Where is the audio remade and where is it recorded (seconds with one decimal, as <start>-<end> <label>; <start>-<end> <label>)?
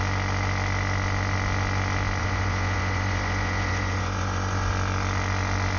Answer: 0.0-2.2 recorded; 2.2-4.7 remade; 4.7-5.8 recorded